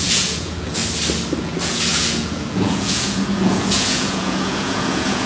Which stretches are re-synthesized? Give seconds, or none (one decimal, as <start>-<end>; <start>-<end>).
0.0-0.8; 1.4-5.3